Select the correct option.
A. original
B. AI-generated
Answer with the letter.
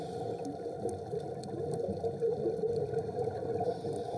A